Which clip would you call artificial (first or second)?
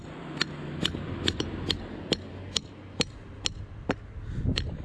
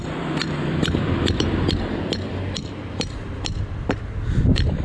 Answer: second